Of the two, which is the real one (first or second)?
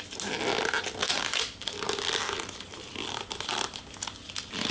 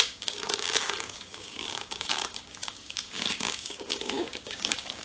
first